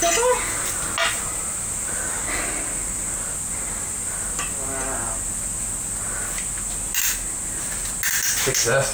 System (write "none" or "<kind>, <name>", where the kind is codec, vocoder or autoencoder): none